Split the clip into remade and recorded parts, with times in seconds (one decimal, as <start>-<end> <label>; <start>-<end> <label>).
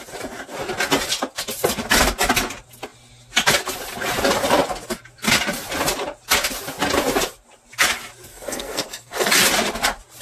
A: 0.0-8.3 recorded; 8.3-9.3 remade; 9.3-10.2 recorded